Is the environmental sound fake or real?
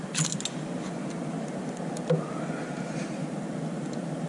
real